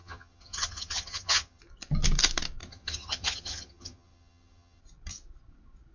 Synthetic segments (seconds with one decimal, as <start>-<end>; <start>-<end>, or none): 0.0-1.6; 2.6-4.8